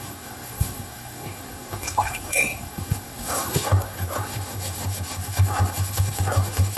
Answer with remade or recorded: remade